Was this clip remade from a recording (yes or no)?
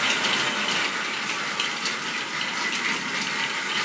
no